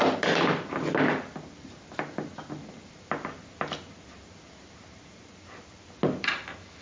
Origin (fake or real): real